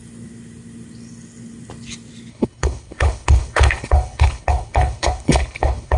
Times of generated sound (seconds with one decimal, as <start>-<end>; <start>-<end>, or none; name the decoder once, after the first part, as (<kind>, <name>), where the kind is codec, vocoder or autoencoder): 2.3-6.0 (codec, HILCodec)